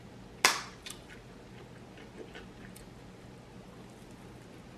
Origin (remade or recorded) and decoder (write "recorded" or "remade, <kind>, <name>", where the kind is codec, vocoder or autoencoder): recorded